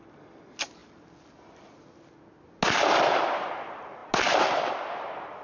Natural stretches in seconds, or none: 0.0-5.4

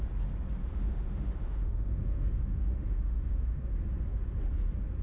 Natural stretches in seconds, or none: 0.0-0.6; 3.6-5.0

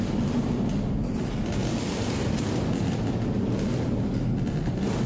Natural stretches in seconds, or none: 0.0-5.1

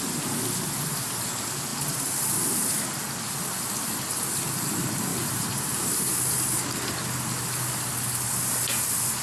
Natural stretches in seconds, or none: 0.0-5.1; 6.1-9.2

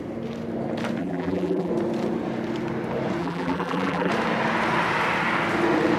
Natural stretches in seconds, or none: 0.0-1.0; 1.7-3.2; 4.1-6.0